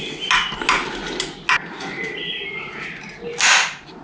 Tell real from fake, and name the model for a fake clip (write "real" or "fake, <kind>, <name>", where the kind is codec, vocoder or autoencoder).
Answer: real